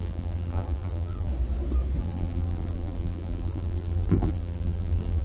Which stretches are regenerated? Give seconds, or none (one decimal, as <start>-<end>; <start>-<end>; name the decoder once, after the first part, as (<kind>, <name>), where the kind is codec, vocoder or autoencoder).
0.0-1.3 (vocoder, BigVGAN v2); 2.0-5.2